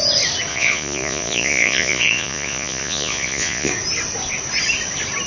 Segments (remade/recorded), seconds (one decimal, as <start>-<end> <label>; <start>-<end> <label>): 0.0-0.5 recorded; 0.5-3.7 remade; 3.7-5.3 recorded